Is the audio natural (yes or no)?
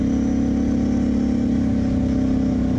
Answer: yes